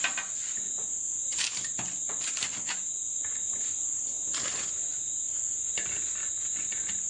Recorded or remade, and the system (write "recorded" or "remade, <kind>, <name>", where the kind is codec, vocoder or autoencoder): recorded